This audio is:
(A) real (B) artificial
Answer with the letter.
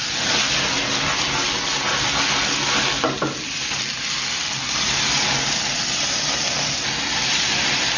A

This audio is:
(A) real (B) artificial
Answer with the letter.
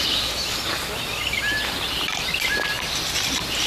A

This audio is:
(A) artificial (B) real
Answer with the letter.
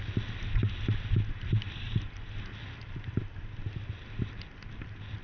B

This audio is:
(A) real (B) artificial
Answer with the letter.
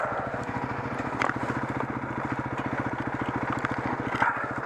A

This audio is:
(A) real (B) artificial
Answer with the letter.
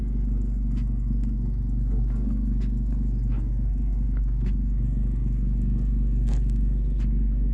B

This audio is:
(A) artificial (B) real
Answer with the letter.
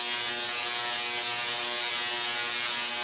B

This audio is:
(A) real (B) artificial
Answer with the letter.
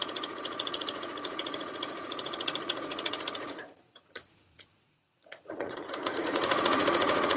B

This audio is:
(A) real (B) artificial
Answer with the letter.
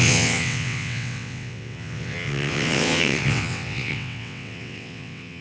B